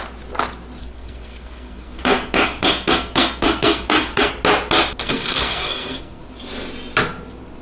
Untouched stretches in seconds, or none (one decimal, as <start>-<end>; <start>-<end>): 0.0-0.8; 4.3-5.0; 6.2-7.6